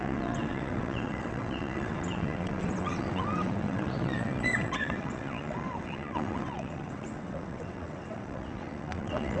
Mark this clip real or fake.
fake